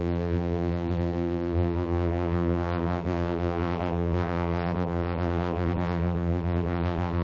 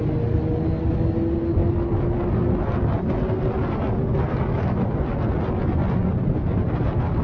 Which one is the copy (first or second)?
first